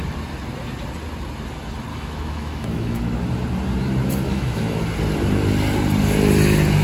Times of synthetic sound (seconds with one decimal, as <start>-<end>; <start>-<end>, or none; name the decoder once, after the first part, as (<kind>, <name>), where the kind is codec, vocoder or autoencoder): 1.9-3.0 (autoencoder, DAC-VAE); 4.3-4.8